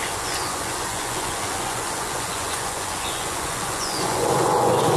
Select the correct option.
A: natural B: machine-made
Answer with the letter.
B